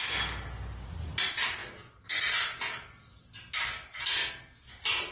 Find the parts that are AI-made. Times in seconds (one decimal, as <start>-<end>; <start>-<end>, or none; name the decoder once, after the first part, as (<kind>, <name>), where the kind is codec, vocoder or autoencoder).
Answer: none